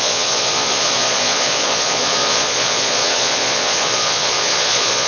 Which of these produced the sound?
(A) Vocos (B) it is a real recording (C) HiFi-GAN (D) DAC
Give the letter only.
A